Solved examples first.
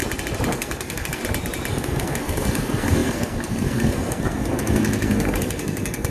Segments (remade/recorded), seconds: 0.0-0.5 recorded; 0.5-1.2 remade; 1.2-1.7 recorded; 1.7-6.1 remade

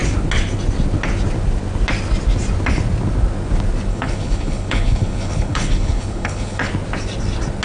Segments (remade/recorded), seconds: 0.0-3.9 recorded; 3.9-6.7 remade; 6.7-7.6 recorded

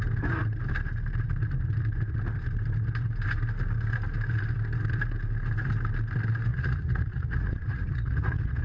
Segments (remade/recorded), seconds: 0.0-6.5 recorded; 6.5-8.6 remade

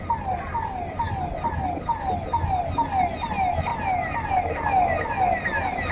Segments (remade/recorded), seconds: 0.0-5.9 recorded